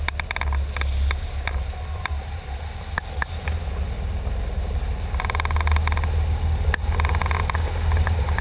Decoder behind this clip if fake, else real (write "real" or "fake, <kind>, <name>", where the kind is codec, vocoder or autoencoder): real